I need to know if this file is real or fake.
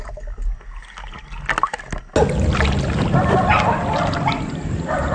real